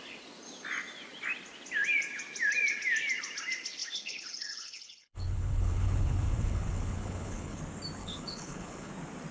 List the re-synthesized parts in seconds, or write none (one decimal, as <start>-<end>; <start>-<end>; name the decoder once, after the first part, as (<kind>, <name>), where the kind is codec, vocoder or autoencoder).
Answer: 3.8-7.6 (codec, HILCodec); 8.0-8.9

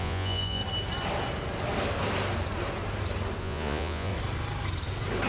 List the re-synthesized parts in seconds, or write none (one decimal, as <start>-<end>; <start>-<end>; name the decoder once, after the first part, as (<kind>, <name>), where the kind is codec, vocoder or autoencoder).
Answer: 0.0-0.6 (vocoder, Vocos); 3.4-4.1

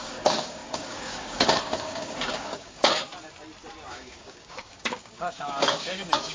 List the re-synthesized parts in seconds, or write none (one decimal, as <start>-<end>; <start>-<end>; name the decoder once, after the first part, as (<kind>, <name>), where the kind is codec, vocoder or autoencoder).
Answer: 0.0-3.1 (codec, DAC); 3.9-6.3

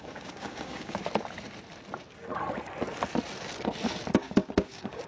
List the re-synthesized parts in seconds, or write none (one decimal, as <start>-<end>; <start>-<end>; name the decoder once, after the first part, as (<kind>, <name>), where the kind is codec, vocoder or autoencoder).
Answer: 0.0-1.0 (codec, DAC); 4.1-5.1

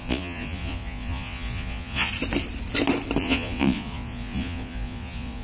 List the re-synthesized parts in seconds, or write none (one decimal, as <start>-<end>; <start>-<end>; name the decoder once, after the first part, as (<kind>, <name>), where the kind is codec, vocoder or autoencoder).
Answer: 0.0-2.1 (vocoder, Vocos); 3.2-5.4